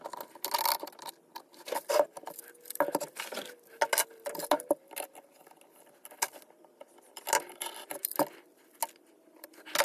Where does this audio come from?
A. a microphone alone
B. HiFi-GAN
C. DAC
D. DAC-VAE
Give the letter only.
A